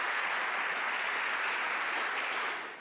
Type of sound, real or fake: real